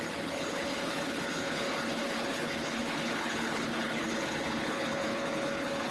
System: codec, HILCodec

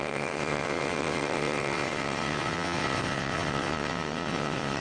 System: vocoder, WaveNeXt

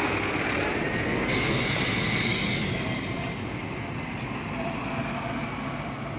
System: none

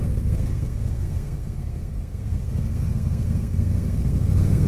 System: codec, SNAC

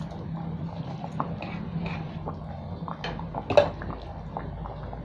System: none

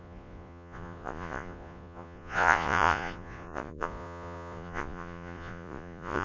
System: vocoder, Vocos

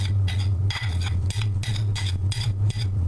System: vocoder, Vocos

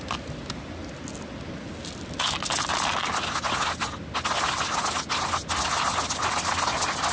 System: none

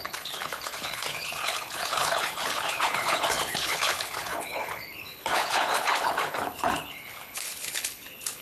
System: codec, HILCodec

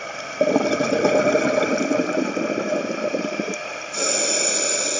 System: none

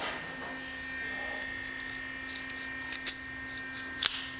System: none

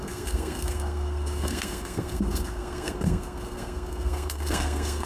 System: codec, SNAC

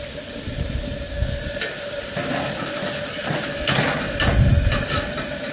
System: none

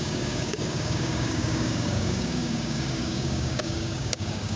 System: codec, DAC